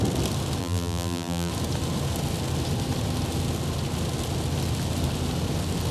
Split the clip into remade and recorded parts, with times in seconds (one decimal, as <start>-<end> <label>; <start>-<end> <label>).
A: 0.0-0.6 recorded; 0.6-1.5 remade; 1.5-5.9 recorded